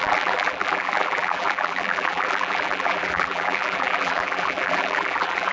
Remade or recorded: remade